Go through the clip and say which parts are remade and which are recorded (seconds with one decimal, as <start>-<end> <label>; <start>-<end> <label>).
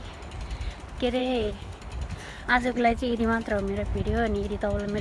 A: 0.0-1.2 recorded; 1.2-1.8 remade; 1.8-2.3 recorded; 2.3-3.2 remade; 3.2-5.0 recorded